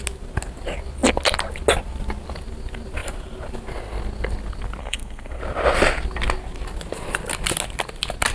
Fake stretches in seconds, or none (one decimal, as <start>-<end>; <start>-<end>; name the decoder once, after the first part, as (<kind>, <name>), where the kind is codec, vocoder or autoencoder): 4.8-5.4 (codec, SNAC)